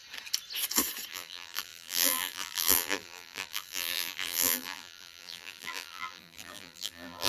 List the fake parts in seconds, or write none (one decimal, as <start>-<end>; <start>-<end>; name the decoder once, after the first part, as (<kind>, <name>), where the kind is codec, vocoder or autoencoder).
1.1-7.3 (vocoder, BigVGAN v2)